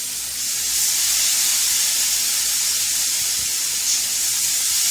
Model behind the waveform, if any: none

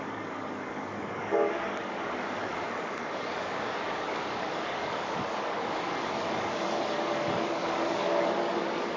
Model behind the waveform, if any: codec, DAC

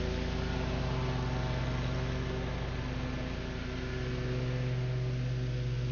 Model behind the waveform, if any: none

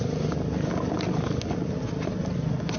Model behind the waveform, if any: none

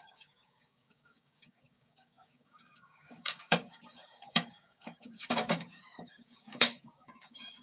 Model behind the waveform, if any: codec, DAC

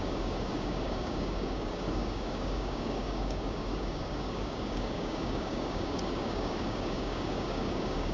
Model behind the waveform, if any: codec, DAC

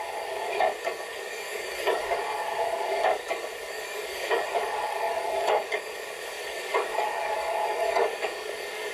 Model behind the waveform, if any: codec, DAC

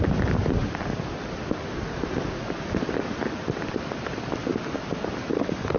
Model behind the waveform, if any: none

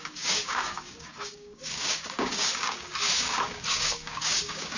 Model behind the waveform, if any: codec, DAC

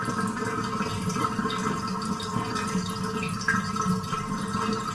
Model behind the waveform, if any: none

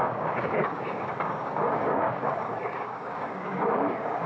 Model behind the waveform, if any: codec, DAC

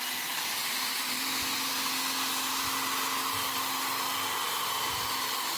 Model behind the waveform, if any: none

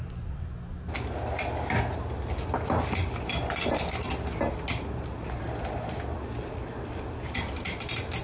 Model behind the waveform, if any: none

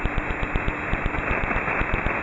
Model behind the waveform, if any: none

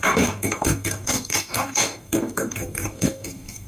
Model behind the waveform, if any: codec, DAC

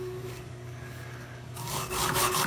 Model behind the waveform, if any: codec, DAC